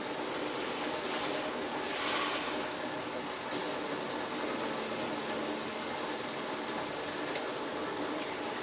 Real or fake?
real